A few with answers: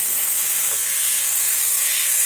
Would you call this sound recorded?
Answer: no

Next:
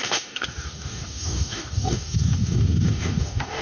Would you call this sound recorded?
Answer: no